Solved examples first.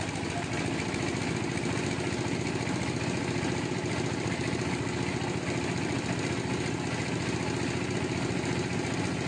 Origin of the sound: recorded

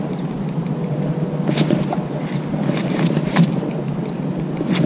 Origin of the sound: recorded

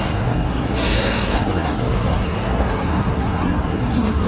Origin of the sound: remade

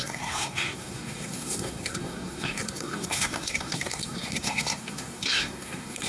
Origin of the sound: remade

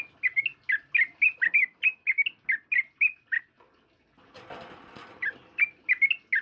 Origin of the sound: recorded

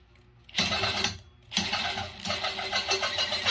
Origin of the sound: recorded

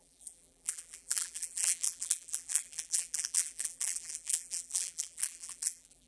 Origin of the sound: remade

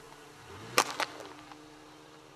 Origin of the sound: recorded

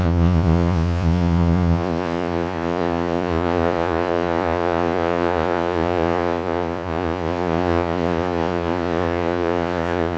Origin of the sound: remade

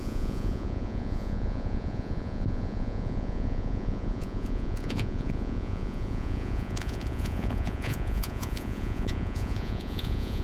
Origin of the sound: remade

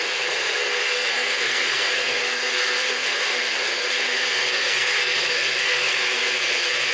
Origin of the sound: remade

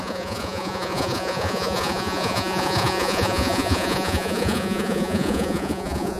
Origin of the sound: remade